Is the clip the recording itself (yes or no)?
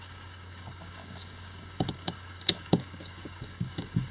no